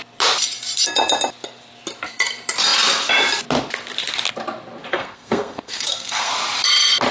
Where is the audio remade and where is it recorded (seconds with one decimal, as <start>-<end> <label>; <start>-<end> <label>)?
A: 0.0-4.9 recorded; 4.9-6.3 remade; 6.3-7.1 recorded